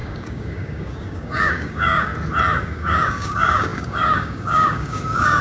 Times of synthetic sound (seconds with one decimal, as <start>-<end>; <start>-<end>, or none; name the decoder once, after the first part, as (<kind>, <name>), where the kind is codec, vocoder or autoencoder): 0.0-2.1 (codec, DAC); 2.6-5.4

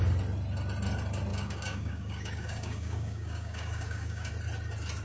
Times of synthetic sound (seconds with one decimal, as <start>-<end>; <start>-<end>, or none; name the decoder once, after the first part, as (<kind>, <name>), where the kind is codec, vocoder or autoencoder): 1.3-4.3 (codec, DAC)